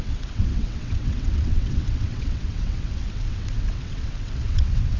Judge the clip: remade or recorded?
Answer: remade